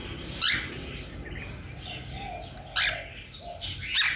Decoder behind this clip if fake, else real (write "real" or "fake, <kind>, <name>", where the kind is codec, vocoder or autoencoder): real